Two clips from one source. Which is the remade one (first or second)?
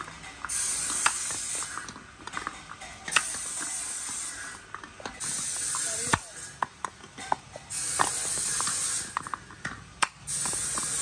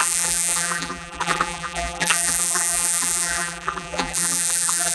second